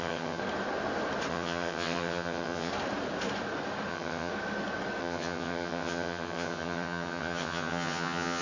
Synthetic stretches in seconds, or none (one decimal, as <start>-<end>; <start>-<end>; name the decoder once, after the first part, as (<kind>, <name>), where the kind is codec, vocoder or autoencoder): 0.0-0.4 (vocoder, HiFi-GAN); 1.3-2.7; 3.9-4.3; 5.0-8.4